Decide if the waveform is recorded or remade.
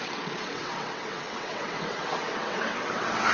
remade